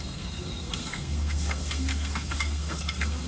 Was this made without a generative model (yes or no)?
no